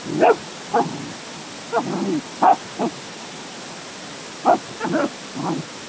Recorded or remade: recorded